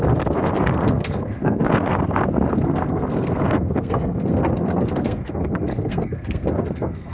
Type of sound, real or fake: fake